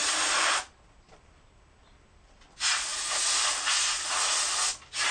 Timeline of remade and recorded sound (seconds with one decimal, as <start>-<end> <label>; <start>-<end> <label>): 0.0-5.1 recorded